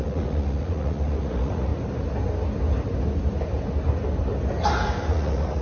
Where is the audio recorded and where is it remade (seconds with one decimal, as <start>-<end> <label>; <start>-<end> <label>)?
0.0-1.7 remade; 1.7-5.1 recorded; 5.1-5.6 remade